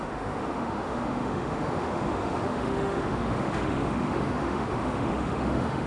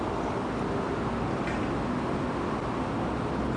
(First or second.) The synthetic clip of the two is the first